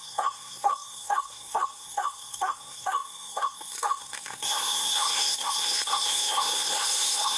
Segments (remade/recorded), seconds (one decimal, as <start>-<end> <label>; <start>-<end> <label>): 0.0-7.4 remade